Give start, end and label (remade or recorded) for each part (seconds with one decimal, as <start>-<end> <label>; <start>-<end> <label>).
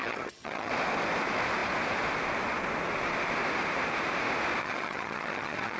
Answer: 0.0-0.7 remade; 0.7-4.6 recorded; 4.6-5.8 remade